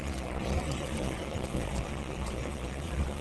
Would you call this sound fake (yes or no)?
yes